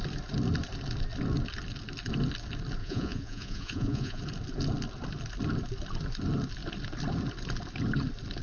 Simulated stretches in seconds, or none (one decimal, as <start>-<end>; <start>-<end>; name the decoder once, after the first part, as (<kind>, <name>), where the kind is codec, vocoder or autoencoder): 2.8-4.2 (vocoder, Vocos)

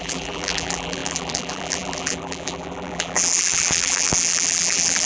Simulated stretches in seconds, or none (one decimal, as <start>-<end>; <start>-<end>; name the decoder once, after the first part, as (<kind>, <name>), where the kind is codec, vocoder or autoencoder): 0.0-5.1 (vocoder, BigVGAN v2)